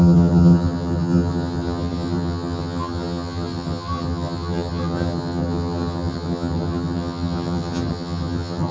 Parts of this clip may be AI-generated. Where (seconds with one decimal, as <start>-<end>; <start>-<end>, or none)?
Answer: 0.0-8.7